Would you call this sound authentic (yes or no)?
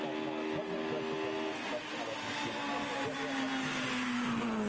yes